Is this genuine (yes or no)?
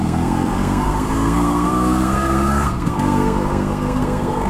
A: no